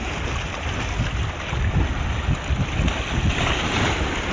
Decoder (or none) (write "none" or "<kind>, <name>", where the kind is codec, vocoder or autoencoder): none